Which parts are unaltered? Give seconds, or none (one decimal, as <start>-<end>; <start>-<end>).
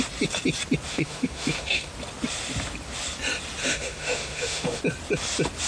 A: 0.0-0.9; 1.9-3.6; 4.8-5.7